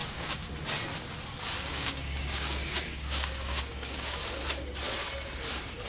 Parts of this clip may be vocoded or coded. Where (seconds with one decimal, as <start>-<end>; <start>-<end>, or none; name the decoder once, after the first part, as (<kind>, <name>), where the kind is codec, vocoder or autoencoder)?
0.0-0.5 (codec, DAC); 1.7-4.2